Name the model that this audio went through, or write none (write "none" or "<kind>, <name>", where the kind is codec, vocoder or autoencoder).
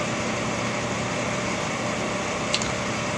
none